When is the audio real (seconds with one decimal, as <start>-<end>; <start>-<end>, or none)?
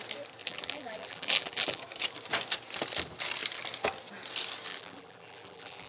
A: 0.0-0.4; 1.8-4.7